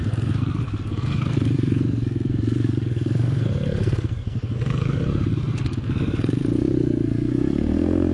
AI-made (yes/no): yes